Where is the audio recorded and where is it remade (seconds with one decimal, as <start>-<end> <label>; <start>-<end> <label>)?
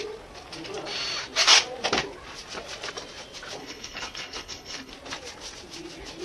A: 0.0-3.6 recorded; 3.6-4.9 remade; 4.9-6.2 recorded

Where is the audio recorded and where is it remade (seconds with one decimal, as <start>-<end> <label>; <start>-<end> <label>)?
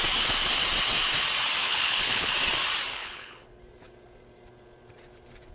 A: 0.0-1.6 recorded; 1.6-2.3 remade; 2.3-2.9 recorded; 2.9-3.6 remade; 3.6-5.5 recorded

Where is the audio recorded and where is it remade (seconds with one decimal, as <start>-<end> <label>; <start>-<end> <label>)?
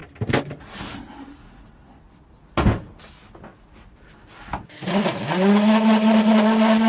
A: 0.0-6.9 recorded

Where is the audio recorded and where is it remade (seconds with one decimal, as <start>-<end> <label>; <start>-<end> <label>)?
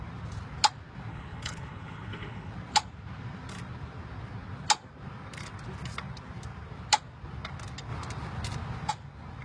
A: 0.0-1.1 recorded; 1.1-2.5 remade; 2.5-9.4 recorded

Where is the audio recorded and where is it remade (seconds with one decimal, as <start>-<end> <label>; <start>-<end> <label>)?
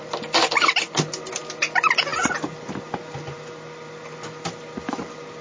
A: 0.0-5.4 recorded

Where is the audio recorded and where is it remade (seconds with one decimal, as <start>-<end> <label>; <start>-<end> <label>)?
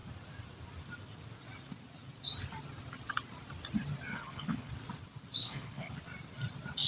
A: 0.0-4.1 recorded; 4.1-4.7 remade; 4.7-5.4 recorded; 5.4-6.0 remade; 6.0-6.9 recorded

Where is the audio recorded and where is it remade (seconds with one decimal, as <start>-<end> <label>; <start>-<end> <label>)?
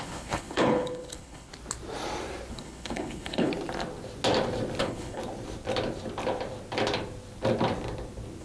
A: 0.0-1.5 remade; 1.5-2.5 recorded; 2.5-3.5 remade; 3.5-4.8 recorded; 4.8-5.2 remade; 5.2-8.4 recorded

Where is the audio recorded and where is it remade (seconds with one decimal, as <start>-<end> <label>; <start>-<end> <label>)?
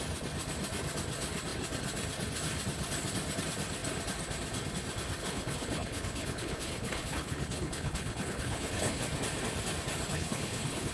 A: 0.0-5.2 recorded; 5.2-9.0 remade; 9.0-10.1 recorded; 10.1-10.9 remade